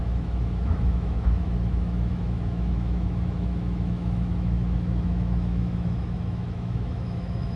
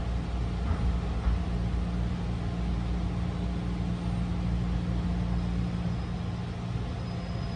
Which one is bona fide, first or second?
second